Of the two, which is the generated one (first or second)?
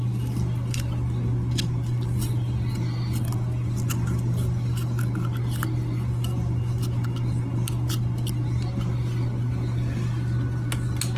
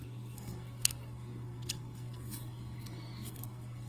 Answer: second